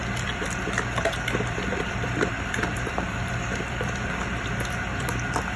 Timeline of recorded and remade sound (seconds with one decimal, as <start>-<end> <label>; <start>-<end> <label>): 0.0-1.7 recorded; 1.7-5.1 remade; 5.1-5.6 recorded